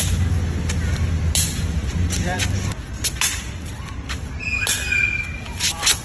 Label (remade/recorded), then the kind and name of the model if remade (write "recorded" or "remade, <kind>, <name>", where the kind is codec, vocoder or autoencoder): recorded